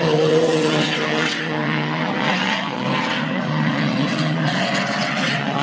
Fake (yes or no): yes